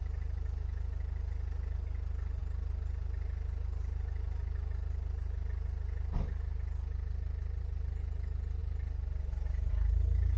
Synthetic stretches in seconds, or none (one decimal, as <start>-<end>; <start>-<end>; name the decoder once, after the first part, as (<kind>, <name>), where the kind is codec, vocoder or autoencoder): none